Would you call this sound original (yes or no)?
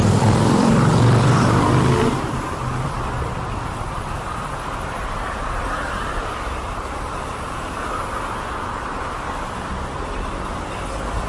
no